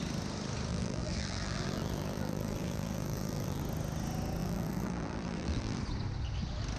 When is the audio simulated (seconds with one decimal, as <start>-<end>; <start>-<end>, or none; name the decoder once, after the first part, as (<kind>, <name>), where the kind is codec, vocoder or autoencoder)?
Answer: 0.7-3.6 (vocoder, BigVGAN v2); 4.4-5.8